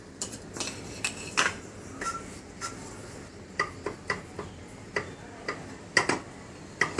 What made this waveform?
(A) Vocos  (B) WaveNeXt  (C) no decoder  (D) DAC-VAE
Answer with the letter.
C